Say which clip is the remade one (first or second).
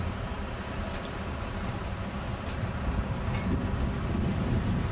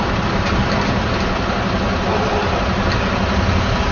first